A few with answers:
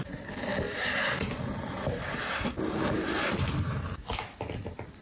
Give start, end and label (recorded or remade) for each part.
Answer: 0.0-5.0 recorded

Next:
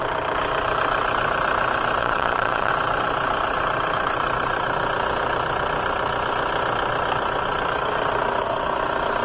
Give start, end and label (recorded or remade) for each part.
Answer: 0.0-2.0 recorded; 2.0-2.7 remade; 2.7-9.2 recorded

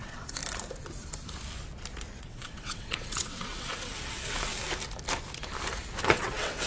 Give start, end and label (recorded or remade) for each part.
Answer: 0.0-0.4 remade; 0.4-2.2 recorded; 2.2-4.5 remade; 4.5-6.0 recorded; 6.0-6.7 remade

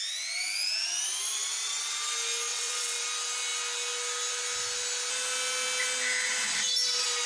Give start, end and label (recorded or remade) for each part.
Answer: 0.0-2.5 recorded; 2.5-3.0 remade; 3.0-7.3 recorded

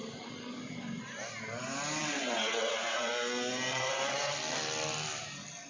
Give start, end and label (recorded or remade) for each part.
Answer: 0.0-2.0 recorded; 2.0-3.1 remade; 3.1-3.7 recorded; 3.7-4.3 remade; 4.3-5.7 recorded

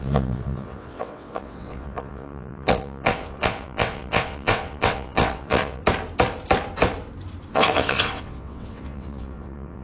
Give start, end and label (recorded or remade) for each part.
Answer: 0.0-5.8 remade; 5.8-7.5 recorded; 7.5-9.8 remade